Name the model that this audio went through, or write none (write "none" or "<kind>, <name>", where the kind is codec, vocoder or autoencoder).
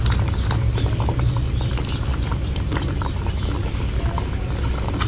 none